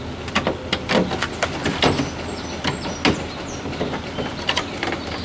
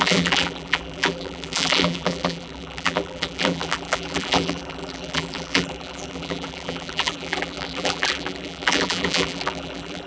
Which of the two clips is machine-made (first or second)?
second